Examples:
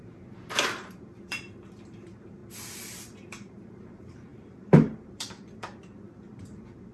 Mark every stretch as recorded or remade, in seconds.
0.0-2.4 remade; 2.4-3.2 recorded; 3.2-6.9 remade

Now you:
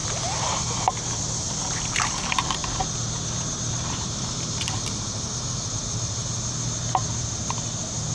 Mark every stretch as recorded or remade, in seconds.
0.0-2.6 remade; 2.6-3.7 recorded; 3.7-6.2 remade; 6.2-8.1 recorded

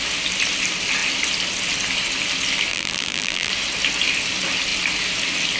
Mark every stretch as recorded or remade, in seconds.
0.0-2.7 recorded; 2.7-3.5 remade; 3.5-5.6 recorded

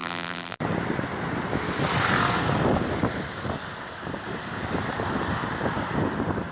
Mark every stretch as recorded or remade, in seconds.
0.0-0.6 remade; 0.6-6.5 recorded

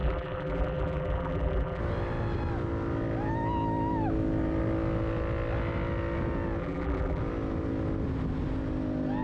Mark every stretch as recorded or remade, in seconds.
0.0-1.8 remade; 1.8-6.6 recorded; 6.6-7.2 remade; 7.2-9.2 recorded

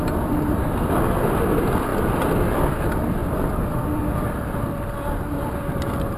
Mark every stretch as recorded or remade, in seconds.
0.0-1.9 recorded; 1.9-2.6 remade; 2.6-6.2 recorded

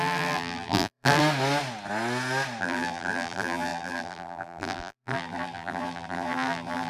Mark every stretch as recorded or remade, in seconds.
0.0-1.2 remade; 1.2-2.6 recorded; 2.6-6.9 remade